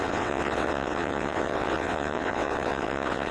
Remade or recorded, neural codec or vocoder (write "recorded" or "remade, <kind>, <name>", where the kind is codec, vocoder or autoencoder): remade, vocoder, WaveNeXt